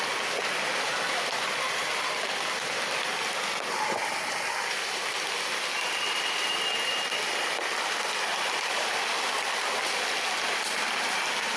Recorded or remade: recorded